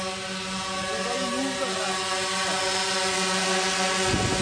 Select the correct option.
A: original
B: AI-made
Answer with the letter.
A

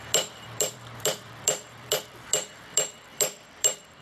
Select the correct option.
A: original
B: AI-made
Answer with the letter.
B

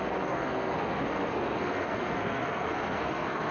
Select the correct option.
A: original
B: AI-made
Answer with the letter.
B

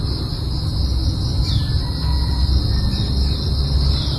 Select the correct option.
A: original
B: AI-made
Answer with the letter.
A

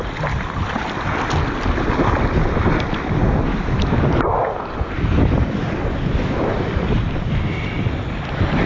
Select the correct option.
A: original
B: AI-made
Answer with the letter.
A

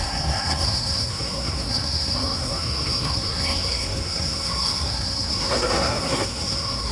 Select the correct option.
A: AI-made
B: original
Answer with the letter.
A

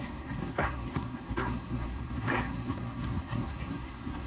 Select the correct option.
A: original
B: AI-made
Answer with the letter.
B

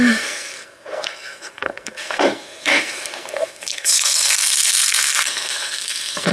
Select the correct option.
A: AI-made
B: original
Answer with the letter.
A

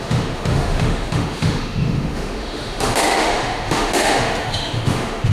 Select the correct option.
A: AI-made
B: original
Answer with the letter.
A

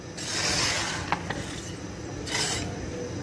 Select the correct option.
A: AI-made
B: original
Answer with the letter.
B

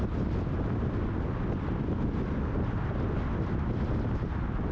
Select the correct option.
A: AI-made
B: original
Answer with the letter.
B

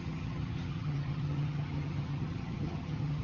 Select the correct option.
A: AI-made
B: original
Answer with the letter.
A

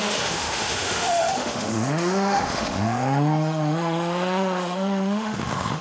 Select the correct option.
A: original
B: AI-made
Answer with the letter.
B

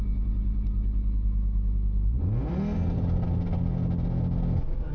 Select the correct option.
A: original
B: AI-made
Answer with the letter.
A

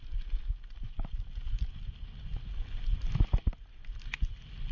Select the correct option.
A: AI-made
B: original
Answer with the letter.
B